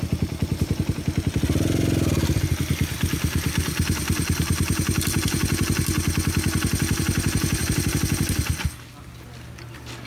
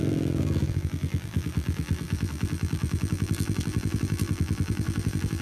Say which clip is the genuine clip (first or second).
first